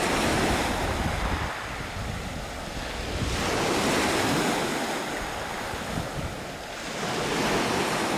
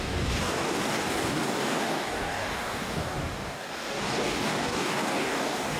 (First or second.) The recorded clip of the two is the first